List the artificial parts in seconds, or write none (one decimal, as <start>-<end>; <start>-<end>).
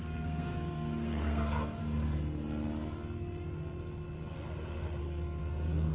0.0-1.8; 5.0-5.4